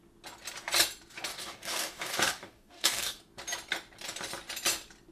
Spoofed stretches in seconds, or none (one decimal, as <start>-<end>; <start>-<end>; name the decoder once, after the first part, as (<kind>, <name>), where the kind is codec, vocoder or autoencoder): 1.3-3.2 (codec, DAC)

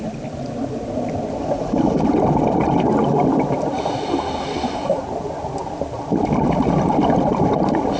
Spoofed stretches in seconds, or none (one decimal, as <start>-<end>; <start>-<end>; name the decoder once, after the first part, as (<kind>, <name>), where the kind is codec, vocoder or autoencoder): none

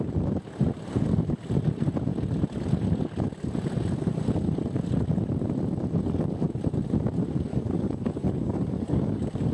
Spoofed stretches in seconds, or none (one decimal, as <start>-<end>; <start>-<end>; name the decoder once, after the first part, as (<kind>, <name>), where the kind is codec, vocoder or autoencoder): 7.5-9.5 (codec, DAC)

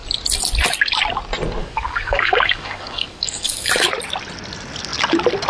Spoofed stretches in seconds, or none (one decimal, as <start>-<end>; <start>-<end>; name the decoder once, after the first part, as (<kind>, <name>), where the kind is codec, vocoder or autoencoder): 1.6-3.7 (codec, DAC)